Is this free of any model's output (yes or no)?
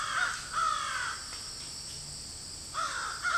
yes